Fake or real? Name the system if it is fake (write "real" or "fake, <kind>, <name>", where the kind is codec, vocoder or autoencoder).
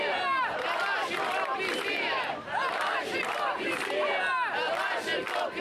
real